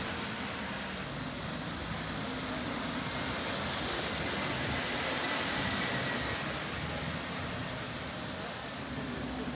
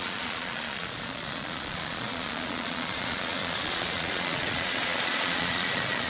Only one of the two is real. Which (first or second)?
first